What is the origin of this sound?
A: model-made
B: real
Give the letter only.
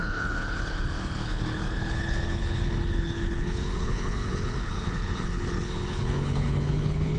A